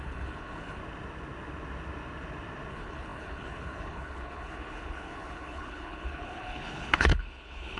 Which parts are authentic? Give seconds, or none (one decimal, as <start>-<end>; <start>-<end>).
0.8-2.7